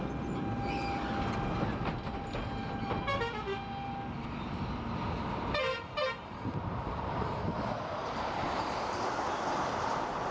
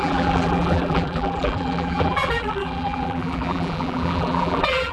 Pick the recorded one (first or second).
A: first